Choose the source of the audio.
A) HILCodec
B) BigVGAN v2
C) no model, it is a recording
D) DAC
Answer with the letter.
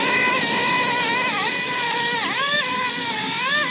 C